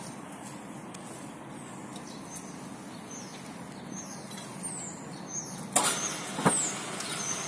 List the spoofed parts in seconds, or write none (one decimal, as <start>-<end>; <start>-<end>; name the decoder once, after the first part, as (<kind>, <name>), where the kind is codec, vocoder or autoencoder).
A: none